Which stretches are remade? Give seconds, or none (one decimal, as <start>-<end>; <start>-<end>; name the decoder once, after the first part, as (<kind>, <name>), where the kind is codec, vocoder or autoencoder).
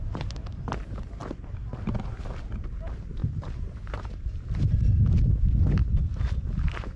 0.0-1.2 (vocoder, BigVGAN v2); 2.4-5.8; 6.4-7.0